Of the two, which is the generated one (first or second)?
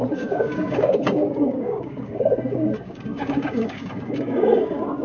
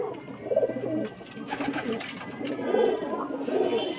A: first